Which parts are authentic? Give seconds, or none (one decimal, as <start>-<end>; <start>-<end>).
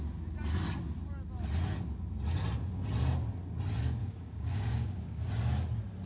0.0-4.0; 5.3-6.1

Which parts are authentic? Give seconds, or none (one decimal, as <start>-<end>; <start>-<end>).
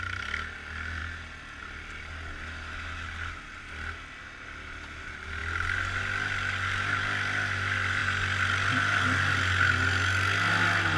0.0-11.0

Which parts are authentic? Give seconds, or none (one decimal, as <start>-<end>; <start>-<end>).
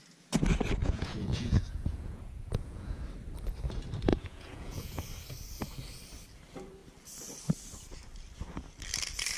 0.0-0.8; 3.0-4.1; 5.1-9.4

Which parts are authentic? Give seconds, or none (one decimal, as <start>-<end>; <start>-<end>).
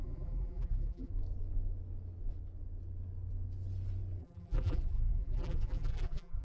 1.1-4.2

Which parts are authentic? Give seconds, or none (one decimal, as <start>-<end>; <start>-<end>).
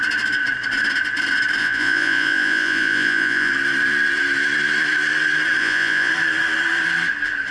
0.0-1.6; 3.5-5.6; 6.1-7.5